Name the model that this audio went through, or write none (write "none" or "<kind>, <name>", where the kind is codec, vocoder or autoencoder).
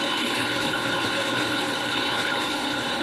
codec, HILCodec